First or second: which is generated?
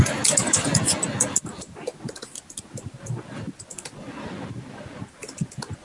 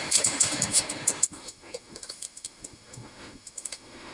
second